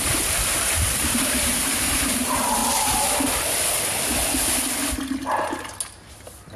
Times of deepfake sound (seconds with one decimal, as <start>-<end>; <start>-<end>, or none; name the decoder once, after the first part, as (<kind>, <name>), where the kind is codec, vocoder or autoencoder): 0.0-2.6 (vocoder, BigVGAN v2)